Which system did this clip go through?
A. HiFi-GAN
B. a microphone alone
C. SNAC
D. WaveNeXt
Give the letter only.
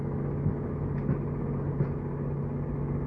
B